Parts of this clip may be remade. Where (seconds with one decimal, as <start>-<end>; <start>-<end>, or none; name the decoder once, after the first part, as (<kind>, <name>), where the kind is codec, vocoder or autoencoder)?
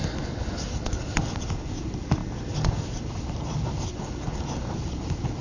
none